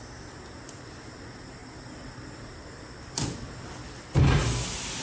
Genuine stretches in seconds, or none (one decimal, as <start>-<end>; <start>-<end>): 0.0-1.6; 4.6-5.0